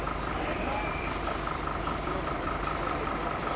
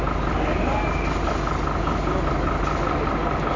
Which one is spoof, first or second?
first